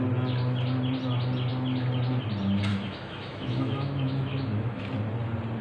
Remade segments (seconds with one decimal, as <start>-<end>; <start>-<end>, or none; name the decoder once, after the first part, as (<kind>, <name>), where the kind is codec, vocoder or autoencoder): 2.7-4.8 (autoencoder, DAC-VAE)